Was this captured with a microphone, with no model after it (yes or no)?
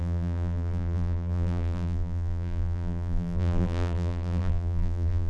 no